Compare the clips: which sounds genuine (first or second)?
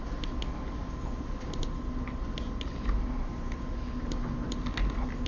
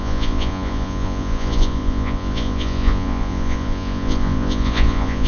first